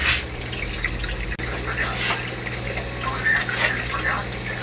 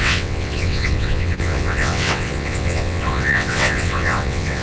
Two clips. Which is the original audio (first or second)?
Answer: first